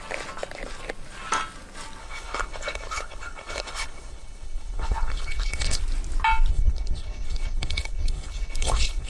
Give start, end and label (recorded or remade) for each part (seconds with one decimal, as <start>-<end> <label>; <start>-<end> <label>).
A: 0.0-2.0 recorded; 2.0-5.8 remade; 5.8-6.5 recorded; 6.5-9.1 remade

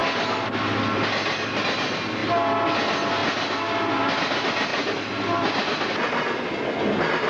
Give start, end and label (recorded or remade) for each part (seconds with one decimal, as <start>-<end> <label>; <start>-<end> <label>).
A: 0.0-7.3 recorded

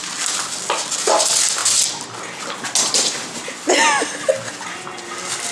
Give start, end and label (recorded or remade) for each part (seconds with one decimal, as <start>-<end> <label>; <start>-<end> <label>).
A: 0.0-5.5 recorded

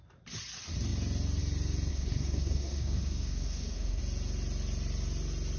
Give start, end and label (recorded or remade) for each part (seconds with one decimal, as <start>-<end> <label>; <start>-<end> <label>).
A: 0.0-1.9 recorded; 1.9-4.0 remade; 4.0-5.6 recorded